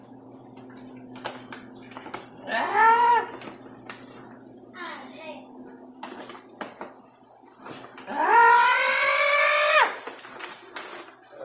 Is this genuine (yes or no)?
yes